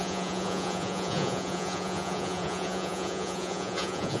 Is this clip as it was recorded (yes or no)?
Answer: no